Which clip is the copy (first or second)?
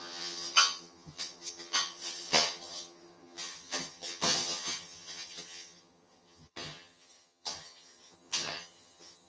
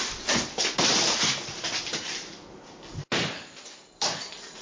first